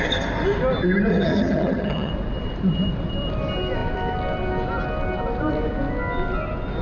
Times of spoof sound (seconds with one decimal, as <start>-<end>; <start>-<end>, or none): 1.1-2.1